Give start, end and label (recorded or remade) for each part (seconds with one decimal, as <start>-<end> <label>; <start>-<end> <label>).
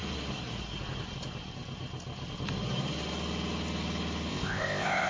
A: 0.0-4.3 recorded; 4.3-5.1 remade